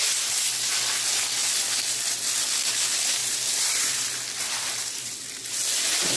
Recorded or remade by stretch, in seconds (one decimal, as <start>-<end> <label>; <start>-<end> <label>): 0.0-1.4 recorded; 1.4-2.2 remade; 2.2-3.2 recorded; 3.2-5.5 remade; 5.5-6.2 recorded